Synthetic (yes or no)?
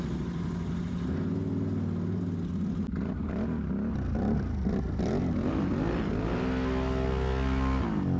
no